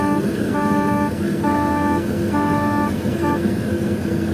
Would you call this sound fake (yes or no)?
yes